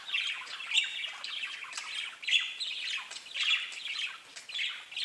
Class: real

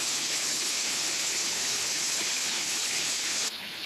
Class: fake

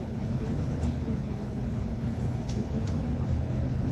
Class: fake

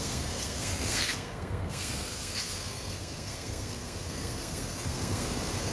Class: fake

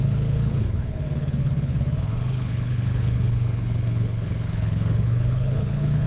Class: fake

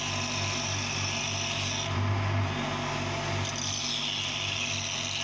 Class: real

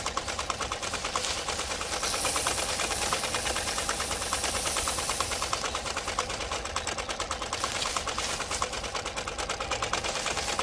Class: real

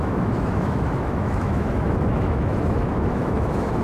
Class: fake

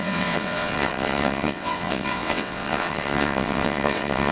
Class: fake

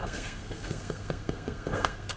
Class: fake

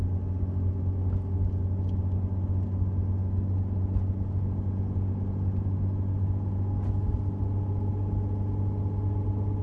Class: real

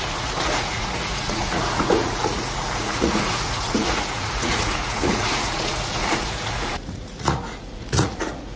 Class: fake